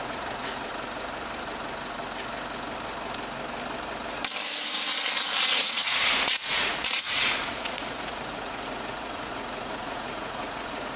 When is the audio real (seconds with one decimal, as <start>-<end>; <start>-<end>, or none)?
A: 0.7-5.4